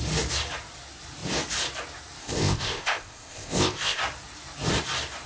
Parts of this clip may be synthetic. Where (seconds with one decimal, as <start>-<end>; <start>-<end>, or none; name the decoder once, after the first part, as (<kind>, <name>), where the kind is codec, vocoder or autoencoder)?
2.2-4.0 (codec, ZipCodec)